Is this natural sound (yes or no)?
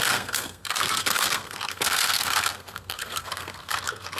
no